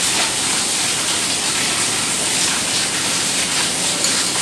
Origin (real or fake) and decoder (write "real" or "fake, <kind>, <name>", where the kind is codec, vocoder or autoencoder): real